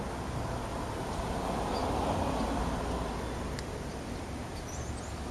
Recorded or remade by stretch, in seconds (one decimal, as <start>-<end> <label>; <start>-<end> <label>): 0.0-5.3 recorded